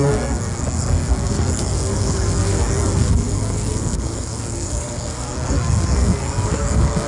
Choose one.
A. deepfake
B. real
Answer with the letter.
A